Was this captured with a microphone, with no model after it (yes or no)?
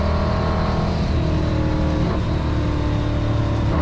yes